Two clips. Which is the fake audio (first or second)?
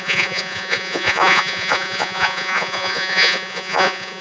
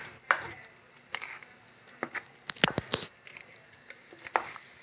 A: first